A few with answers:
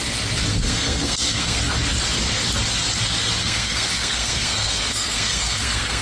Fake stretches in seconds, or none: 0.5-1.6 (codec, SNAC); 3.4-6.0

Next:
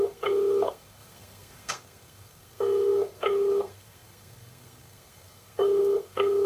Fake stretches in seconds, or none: 0.0-6.5 (codec, SNAC)

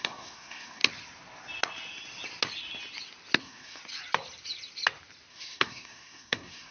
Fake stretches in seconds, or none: 0.0-0.8 (codec, SNAC); 3.4-3.8; 5.3-6.7

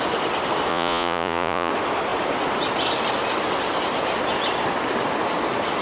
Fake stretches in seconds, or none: 0.7-1.7 (vocoder, Vocos)

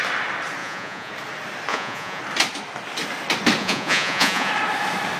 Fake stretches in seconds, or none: 0.6-1.1 (vocoder, Vocos); 1.7-2.2; 3.6-4.5

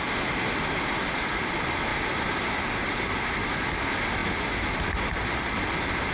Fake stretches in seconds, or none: none

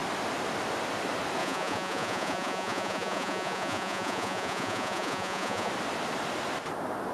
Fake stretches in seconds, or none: 1.4-5.7 (vocoder, Vocos)

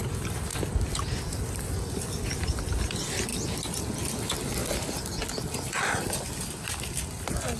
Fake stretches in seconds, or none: none